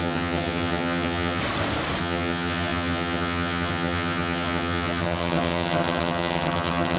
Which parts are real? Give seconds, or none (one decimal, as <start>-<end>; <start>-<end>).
1.4-2.0